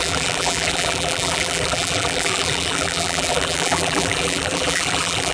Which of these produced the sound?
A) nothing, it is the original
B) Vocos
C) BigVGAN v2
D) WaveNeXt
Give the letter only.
C